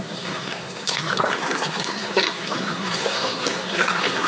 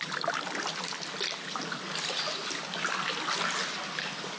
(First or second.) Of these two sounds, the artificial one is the first